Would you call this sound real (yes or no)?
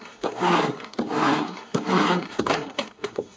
no